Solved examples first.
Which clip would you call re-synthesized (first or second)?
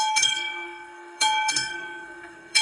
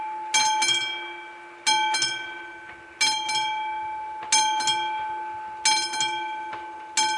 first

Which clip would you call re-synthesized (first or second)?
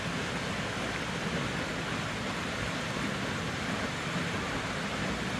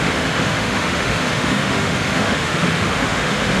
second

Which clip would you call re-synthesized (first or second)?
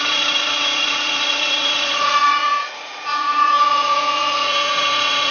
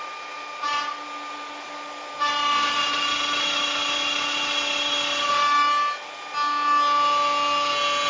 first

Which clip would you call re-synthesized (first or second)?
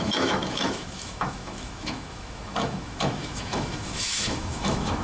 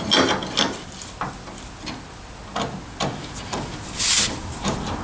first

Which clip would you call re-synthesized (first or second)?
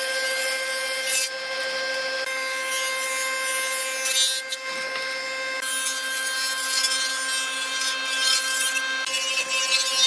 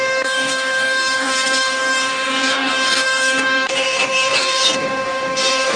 second